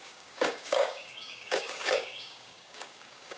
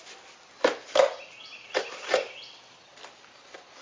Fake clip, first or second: first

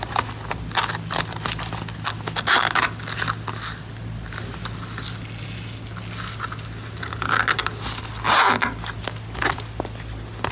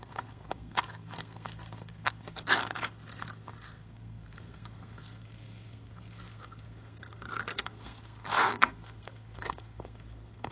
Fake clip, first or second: second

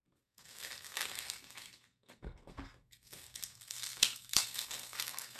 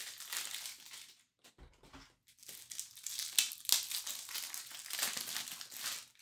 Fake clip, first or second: first